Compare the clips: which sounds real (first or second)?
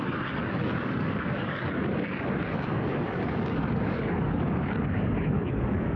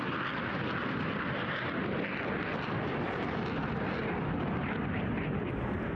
second